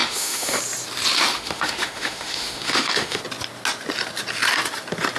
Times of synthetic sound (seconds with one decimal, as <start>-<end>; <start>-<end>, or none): 0.0-0.6; 1.3-3.2